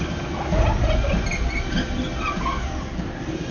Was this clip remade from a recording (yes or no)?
no